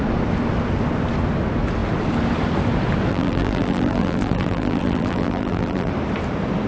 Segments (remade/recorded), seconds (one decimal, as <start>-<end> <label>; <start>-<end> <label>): 0.0-3.1 recorded; 3.1-5.9 remade; 5.9-6.7 recorded